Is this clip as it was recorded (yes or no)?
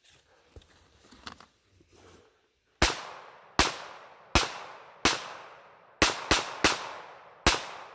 yes